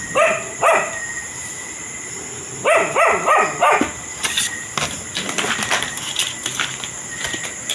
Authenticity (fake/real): real